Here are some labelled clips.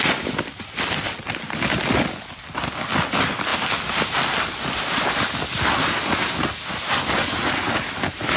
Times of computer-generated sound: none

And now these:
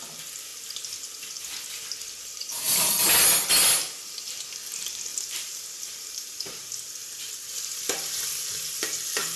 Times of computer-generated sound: 5.1-9.4 (vocoder, BigVGAN v2)

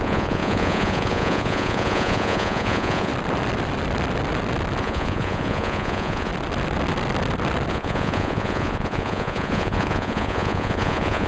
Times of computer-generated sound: 0.0-3.1 (vocoder, Vocos); 4.8-6.3; 7.7-11.3

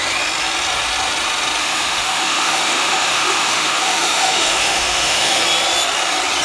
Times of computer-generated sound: 1.6-5.4 (autoencoder, DAC-VAE)

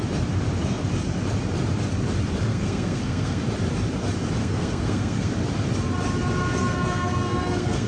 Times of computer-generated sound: 2.5-3.4 (codec, SNAC); 4.4-5.3; 6.6-7.9

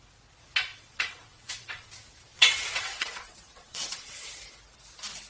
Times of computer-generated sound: 0.7-1.9 (vocoder, WaveNeXt); 2.3-4.3

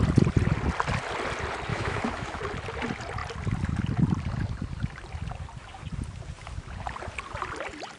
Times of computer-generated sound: 1.7-2.4 (autoencoder, DAC-VAE)